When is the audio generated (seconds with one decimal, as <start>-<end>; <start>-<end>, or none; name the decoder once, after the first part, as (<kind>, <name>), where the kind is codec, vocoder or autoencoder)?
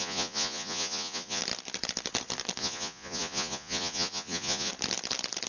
0.0-1.4 (vocoder, Vocos); 2.6-4.7